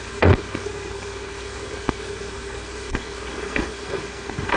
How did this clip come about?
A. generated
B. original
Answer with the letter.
A